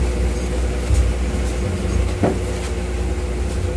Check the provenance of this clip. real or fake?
real